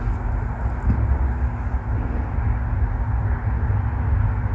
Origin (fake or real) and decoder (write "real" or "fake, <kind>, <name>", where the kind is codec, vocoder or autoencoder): real